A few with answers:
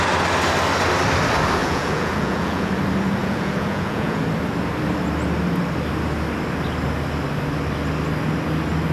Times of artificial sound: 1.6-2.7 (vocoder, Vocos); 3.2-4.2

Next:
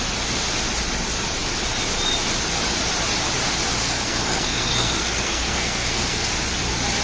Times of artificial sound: 3.8-6.3 (codec, SNAC)

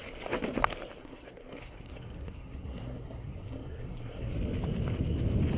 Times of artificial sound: 1.0-4.3 (codec, SNAC)

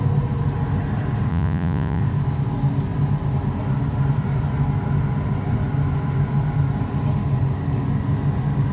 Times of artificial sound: 1.3-2.0 (vocoder, Vocos)

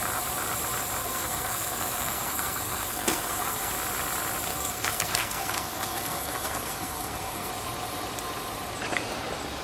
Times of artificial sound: 1.0-3.7 (codec, SNAC); 4.5-7.5

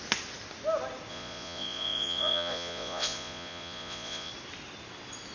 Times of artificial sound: 1.1-4.3 (vocoder, Vocos)